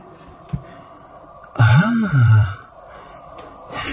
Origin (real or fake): fake